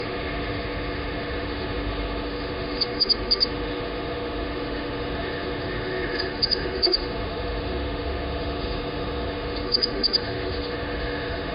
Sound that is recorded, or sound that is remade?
remade